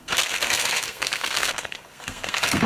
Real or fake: fake